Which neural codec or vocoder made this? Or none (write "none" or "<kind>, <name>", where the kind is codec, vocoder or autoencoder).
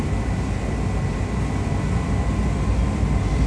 none